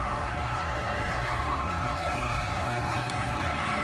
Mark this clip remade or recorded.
remade